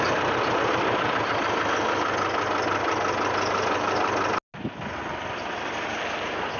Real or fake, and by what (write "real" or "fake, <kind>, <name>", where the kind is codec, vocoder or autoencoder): real